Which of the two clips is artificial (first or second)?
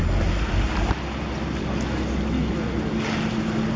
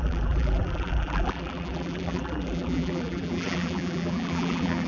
second